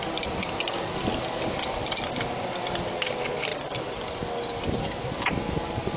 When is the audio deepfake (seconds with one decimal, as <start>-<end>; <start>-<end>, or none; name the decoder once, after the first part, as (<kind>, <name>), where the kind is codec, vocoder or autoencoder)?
none